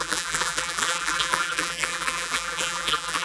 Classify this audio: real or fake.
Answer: fake